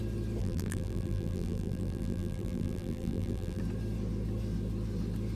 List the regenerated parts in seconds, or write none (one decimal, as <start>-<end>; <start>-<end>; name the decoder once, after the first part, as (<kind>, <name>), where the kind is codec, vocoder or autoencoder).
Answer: 0.4-3.6 (vocoder, BigVGAN v2)